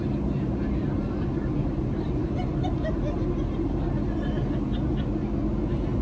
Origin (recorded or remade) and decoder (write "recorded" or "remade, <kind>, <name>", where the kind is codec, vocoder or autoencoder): recorded